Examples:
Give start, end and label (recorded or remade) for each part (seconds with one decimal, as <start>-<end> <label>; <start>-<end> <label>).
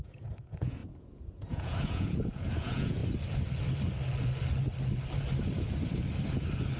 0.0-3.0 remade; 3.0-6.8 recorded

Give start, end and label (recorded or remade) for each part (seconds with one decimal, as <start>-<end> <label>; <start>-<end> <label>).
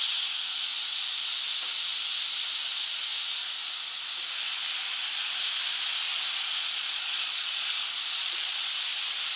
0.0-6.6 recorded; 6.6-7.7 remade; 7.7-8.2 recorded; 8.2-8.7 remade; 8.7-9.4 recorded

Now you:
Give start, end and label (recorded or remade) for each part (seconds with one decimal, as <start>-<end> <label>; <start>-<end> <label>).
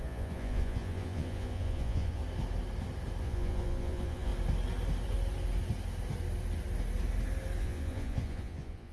0.0-2.2 remade; 2.2-3.2 recorded; 3.2-4.3 remade; 4.3-7.6 recorded; 7.6-8.9 remade